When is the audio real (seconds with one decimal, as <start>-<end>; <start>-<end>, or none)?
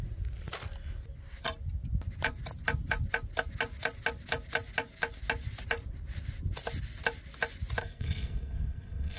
0.0-7.8